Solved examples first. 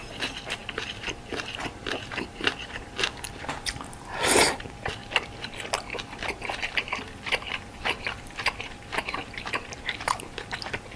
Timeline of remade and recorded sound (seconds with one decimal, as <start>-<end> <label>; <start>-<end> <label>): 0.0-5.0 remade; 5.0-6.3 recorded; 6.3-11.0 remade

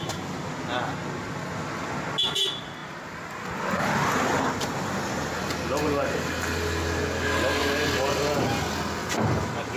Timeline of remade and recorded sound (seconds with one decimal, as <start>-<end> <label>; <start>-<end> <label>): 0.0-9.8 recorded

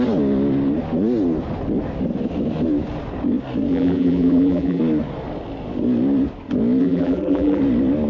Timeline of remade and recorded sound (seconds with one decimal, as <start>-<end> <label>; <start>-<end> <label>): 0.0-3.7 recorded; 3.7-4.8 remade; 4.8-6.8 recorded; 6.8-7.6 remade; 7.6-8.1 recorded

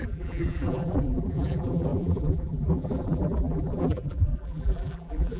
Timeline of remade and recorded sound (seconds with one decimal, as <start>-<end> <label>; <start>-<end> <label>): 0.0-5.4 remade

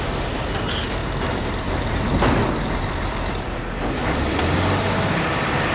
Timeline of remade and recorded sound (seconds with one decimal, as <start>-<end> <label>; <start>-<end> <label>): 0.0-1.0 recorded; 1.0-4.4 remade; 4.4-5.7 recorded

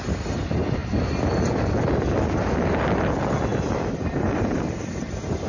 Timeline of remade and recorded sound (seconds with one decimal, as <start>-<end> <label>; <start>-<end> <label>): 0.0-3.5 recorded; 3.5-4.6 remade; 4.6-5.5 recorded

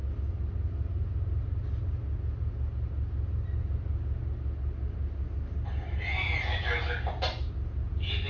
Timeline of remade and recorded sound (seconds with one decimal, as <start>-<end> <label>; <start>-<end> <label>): 0.0-8.3 recorded

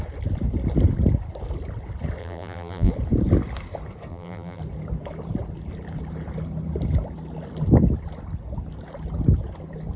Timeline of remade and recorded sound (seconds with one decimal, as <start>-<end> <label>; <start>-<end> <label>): 0.0-2.2 recorded; 2.2-2.9 remade; 2.9-4.1 recorded; 4.1-4.6 remade; 4.6-10.0 recorded